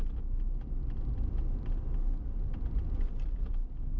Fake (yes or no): no